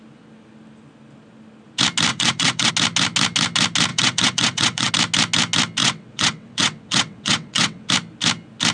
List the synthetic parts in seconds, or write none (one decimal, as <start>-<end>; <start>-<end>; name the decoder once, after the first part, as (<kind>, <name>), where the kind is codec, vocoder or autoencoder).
2.1-2.7 (vocoder, WaveNeXt); 3.9-4.9; 5.8-7.9